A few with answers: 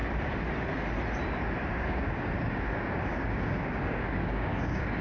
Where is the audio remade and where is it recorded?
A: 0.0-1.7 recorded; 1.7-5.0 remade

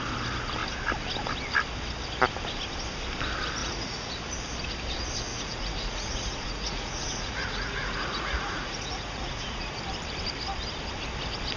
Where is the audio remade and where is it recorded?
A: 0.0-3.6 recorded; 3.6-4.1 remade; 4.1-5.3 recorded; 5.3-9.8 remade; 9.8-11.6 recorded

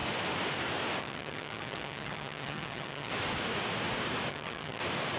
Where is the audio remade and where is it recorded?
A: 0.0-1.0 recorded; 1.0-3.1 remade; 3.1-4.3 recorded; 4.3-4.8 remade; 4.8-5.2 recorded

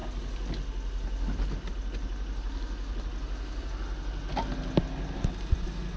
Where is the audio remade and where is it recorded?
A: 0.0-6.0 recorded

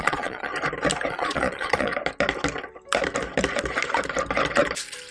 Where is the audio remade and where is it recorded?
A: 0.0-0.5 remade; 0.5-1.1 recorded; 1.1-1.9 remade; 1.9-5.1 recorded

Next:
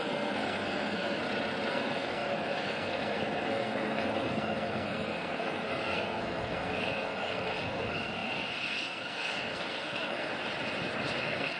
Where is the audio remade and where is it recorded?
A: 0.0-1.2 remade; 1.2-1.7 recorded; 1.7-10.3 remade; 10.3-11.2 recorded; 11.2-11.6 remade

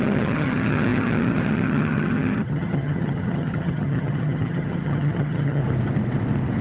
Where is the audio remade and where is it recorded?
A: 0.0-5.6 remade; 5.6-6.6 recorded